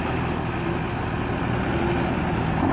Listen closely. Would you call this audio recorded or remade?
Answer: recorded